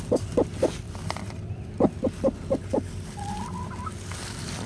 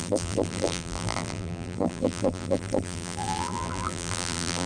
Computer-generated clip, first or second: second